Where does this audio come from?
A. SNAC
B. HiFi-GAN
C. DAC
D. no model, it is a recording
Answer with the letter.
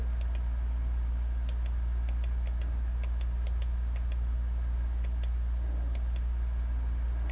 D